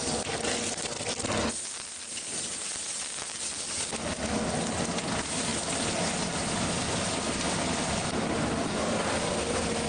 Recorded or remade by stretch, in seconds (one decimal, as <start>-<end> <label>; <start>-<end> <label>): 0.0-9.9 recorded